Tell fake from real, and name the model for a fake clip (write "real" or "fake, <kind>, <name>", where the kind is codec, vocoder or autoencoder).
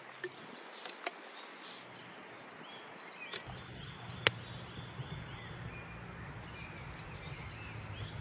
real